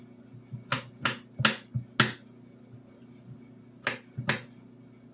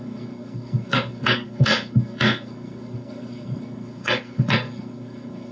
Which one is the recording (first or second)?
first